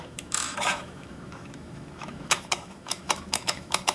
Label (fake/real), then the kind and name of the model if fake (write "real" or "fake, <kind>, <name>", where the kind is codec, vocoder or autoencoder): fake, autoencoder, DAC-VAE